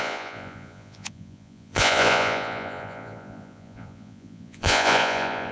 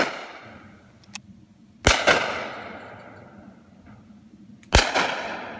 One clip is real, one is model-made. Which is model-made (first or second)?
first